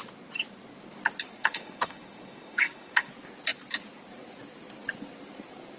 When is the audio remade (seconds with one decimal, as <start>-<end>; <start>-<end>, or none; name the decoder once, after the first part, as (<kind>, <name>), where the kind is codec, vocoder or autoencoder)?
1.4-3.1 (codec, DAC)